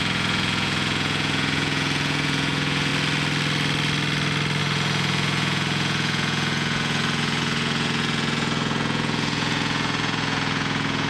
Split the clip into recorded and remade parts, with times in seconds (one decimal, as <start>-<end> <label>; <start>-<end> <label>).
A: 0.0-2.9 remade; 2.9-4.6 recorded; 4.6-11.1 remade